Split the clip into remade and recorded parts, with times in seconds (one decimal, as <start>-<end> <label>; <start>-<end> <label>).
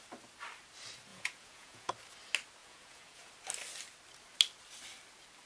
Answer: 0.0-1.1 recorded; 1.1-1.9 remade; 1.9-2.6 recorded; 2.6-3.3 remade; 3.3-5.5 recorded